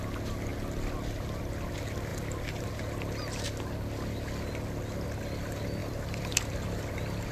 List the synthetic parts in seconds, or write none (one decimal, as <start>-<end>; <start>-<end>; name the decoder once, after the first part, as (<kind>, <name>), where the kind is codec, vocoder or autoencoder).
2.1-2.7 (vocoder, BigVGAN v2); 5.8-7.3